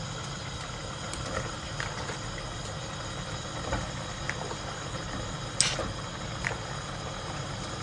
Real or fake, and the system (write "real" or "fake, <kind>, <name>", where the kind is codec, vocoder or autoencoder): real